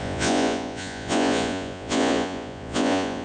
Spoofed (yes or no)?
yes